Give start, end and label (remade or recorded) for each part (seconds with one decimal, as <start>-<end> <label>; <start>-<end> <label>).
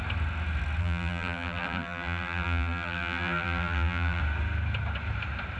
0.0-0.8 recorded; 0.8-4.2 remade; 4.2-5.6 recorded